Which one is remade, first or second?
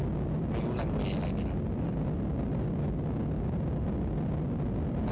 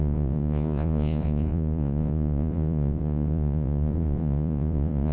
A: second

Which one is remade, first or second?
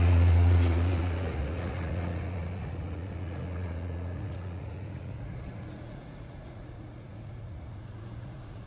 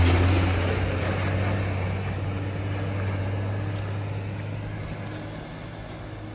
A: first